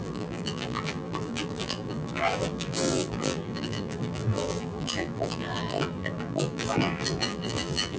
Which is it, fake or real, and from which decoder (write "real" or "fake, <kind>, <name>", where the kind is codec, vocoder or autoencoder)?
fake, vocoder, BigVGAN v2